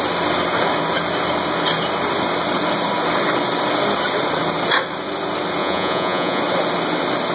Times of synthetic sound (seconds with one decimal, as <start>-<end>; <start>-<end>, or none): 5.6-6.4